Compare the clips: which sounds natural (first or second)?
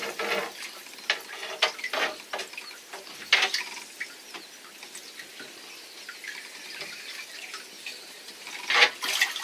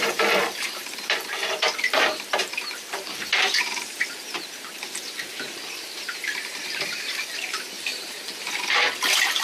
first